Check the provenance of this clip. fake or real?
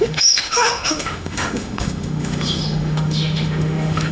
fake